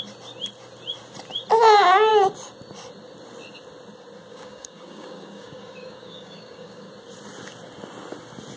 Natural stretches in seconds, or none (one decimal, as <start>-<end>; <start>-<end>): 0.0-4.3; 6.9-8.6